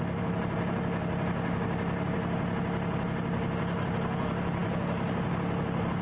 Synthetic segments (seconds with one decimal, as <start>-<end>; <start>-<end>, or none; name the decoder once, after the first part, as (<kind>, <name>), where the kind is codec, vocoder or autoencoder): none